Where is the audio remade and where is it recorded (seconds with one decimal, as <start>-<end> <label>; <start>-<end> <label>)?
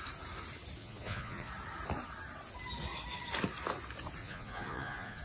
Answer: 0.0-0.8 recorded; 0.8-1.5 remade; 1.5-4.2 recorded; 4.2-5.2 remade